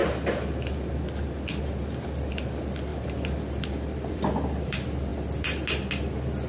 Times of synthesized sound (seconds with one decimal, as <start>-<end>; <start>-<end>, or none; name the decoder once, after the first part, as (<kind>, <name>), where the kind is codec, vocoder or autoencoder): 2.3-2.9 (vocoder, BigVGAN v2); 3.5-5.1